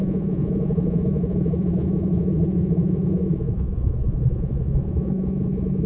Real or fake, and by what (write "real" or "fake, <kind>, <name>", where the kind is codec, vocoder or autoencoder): fake, vocoder, Vocos